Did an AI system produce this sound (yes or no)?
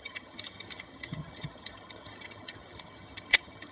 yes